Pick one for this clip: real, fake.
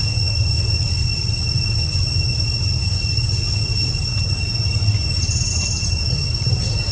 real